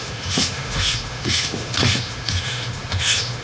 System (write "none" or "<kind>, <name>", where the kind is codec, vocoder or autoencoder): autoencoder, DAC-VAE